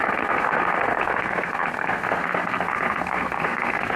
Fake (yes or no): yes